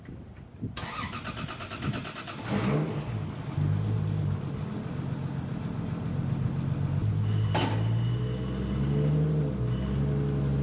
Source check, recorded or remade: recorded